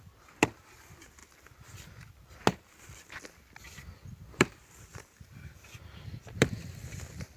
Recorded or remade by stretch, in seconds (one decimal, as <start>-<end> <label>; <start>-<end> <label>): 0.0-4.2 recorded; 4.2-6.1 remade; 6.1-7.4 recorded